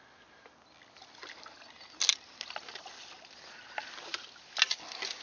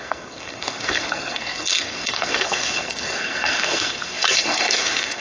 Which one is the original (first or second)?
first